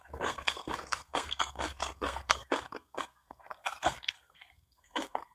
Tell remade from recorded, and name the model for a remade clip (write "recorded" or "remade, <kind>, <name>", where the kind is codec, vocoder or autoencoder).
remade, codec, SNAC